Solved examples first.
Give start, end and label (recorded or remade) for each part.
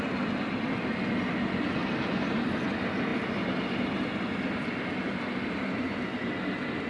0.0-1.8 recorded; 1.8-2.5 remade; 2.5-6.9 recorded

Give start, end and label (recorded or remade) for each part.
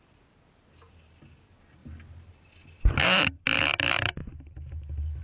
0.0-5.2 recorded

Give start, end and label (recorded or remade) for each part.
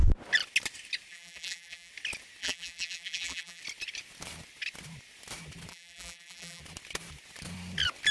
0.0-1.1 recorded; 1.1-1.9 remade; 1.9-2.4 recorded; 2.4-3.6 remade; 3.6-5.7 recorded; 5.7-6.6 remade; 6.6-8.1 recorded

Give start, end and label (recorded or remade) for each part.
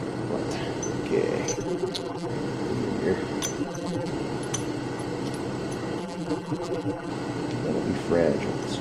0.0-1.5 recorded; 1.5-2.3 remade; 2.3-3.6 recorded; 3.6-4.1 remade; 4.1-6.0 recorded; 6.0-7.1 remade; 7.1-8.8 recorded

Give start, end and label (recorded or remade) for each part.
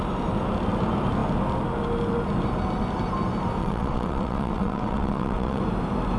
0.0-3.6 recorded; 3.6-5.6 remade; 5.6-6.2 recorded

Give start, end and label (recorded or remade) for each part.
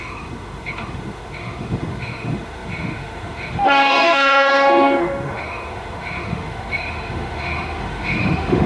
0.0-8.7 remade